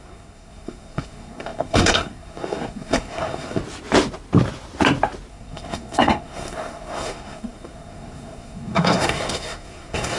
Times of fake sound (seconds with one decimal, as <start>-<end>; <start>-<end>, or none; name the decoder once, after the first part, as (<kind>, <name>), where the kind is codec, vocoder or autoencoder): 0.0-3.6 (codec, SNAC); 5.3-10.2